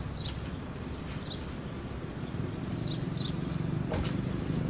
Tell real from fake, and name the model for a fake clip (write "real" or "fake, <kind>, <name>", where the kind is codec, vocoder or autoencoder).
real